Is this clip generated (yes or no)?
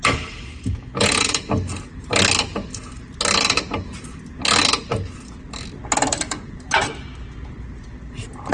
no